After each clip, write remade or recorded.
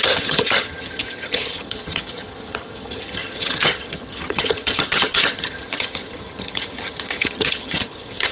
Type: remade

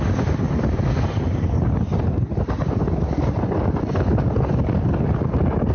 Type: recorded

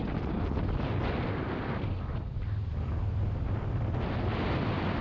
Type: recorded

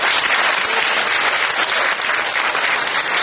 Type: recorded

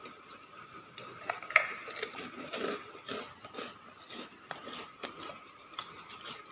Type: recorded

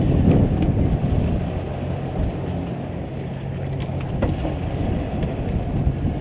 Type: recorded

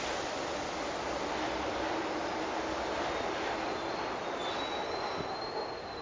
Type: recorded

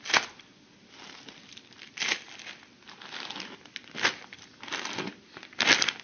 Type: recorded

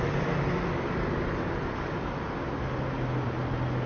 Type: recorded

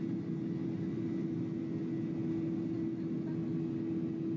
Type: recorded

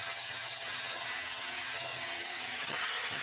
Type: remade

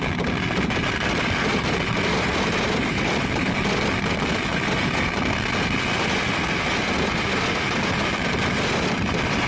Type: recorded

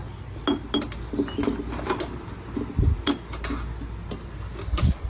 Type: recorded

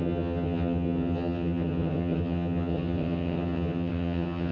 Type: remade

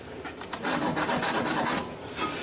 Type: recorded